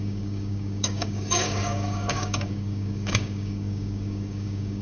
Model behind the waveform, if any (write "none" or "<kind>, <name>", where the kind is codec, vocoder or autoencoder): codec, DAC